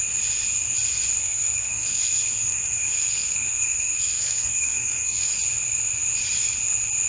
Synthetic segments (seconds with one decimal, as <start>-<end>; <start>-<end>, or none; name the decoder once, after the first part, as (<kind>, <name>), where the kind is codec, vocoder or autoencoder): 1.2-5.4 (codec, SNAC)